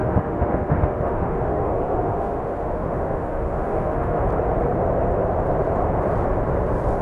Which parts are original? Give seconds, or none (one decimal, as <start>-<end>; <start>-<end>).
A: 4.2-7.0